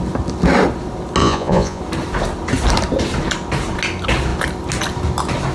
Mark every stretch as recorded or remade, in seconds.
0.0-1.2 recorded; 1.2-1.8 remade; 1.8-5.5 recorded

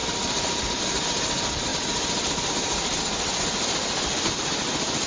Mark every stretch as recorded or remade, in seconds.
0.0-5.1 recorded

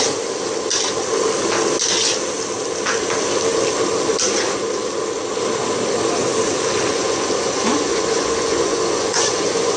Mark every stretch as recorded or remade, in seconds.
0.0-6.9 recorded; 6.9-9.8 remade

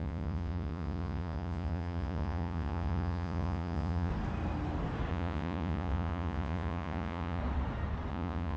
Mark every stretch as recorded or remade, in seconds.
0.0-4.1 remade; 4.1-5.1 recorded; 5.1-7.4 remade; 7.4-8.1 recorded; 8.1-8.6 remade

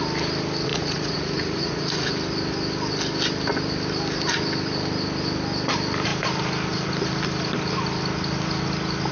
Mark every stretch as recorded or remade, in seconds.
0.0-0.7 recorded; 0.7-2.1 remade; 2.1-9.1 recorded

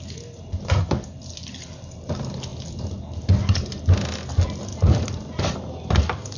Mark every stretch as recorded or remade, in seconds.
0.0-6.4 recorded

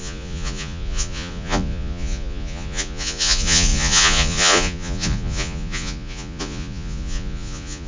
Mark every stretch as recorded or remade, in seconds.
0.0-7.9 remade

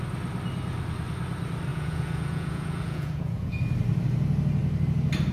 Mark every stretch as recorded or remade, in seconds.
0.0-1.7 recorded; 1.7-3.6 remade; 3.6-5.3 recorded